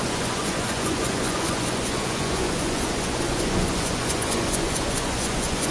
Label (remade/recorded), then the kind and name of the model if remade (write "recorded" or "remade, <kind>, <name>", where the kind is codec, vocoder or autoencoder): remade, vocoder, Vocos